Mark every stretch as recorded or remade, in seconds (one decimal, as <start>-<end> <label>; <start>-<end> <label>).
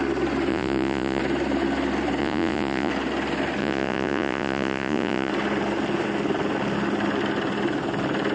0.0-0.5 recorded; 0.5-1.2 remade; 1.2-2.2 recorded; 2.2-2.9 remade; 2.9-3.6 recorded; 3.6-5.3 remade; 5.3-8.3 recorded